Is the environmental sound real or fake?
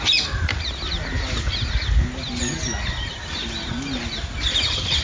real